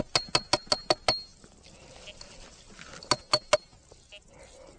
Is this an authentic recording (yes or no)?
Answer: yes